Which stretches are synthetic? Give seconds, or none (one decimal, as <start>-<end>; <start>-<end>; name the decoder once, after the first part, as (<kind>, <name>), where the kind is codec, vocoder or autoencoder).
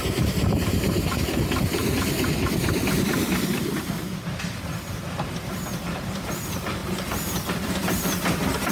0.0-1.8 (vocoder, BigVGAN v2); 5.8-8.7